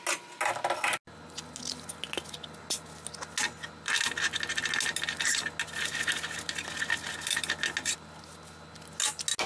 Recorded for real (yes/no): yes